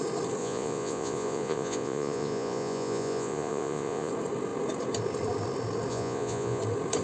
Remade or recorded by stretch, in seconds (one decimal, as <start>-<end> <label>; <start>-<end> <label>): 0.0-0.4 recorded; 0.4-4.1 remade; 4.1-5.9 recorded; 5.9-6.6 remade; 6.6-7.0 recorded